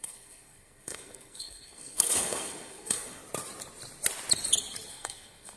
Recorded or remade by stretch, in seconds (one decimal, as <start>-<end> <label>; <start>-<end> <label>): 0.0-3.2 remade; 3.2-4.9 recorded; 4.9-5.6 remade